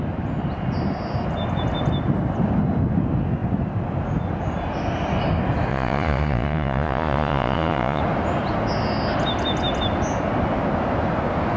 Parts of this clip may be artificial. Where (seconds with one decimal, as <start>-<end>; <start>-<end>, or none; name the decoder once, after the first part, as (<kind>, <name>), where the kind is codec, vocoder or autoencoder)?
5.7-8.0 (vocoder, Vocos)

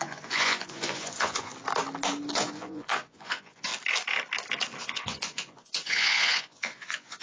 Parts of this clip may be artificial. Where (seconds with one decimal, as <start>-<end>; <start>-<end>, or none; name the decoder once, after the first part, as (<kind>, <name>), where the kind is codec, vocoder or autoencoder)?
0.0-1.5 (vocoder, Vocos); 2.3-3.7; 4.8-7.2

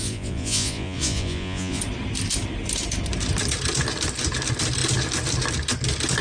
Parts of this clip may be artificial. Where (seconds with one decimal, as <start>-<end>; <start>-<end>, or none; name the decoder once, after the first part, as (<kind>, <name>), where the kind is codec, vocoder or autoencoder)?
0.0-1.8 (vocoder, Vocos)

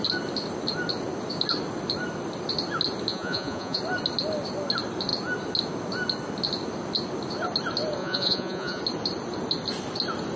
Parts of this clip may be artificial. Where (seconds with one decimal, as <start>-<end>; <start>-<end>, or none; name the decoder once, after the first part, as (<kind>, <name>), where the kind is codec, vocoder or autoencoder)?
3.1-3.8 (vocoder, Vocos); 8.0-8.8

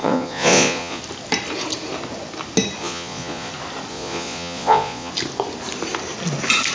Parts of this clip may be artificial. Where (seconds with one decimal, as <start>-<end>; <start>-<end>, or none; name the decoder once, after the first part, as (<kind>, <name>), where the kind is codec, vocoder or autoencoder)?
0.0-1.0 (vocoder, Vocos); 2.8-3.5; 3.9-5.1

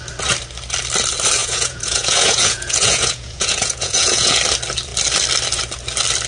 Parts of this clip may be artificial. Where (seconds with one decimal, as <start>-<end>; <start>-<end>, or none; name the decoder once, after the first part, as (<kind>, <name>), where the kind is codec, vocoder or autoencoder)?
1.4-4.4 (vocoder, Vocos)

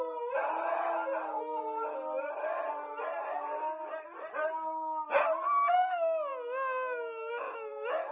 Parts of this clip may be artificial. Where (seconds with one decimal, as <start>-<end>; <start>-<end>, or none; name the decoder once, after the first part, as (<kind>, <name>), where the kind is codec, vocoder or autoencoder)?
none